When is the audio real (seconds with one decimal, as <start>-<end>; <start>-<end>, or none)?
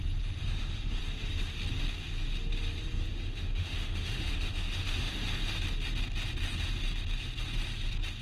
0.0-0.4; 1.0-3.1; 5.1-8.2